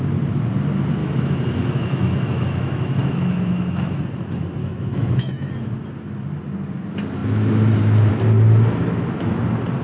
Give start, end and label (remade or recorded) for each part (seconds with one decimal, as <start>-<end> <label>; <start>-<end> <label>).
0.0-1.0 recorded; 1.0-4.0 remade; 4.0-4.6 recorded; 4.6-5.5 remade; 5.5-9.8 recorded